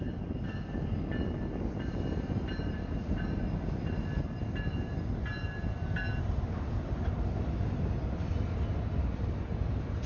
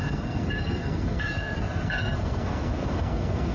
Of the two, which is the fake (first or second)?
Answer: second